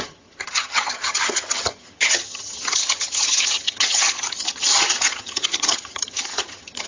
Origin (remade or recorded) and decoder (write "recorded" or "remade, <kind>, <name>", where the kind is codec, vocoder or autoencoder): remade, vocoder, HiFi-GAN